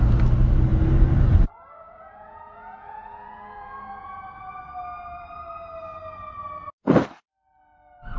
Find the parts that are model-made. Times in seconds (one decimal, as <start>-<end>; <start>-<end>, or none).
1.8-4.4